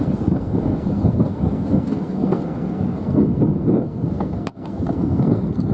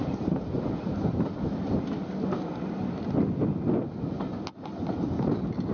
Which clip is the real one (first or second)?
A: second